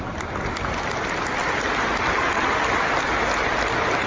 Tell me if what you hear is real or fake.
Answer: real